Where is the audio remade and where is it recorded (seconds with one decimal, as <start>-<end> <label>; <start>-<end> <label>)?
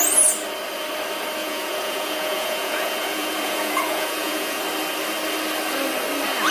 0.0-1.4 recorded; 1.4-4.6 remade; 4.6-6.5 recorded